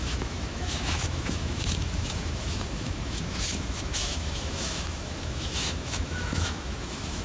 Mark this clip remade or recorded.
remade